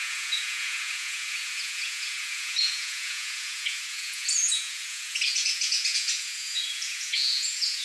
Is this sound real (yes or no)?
no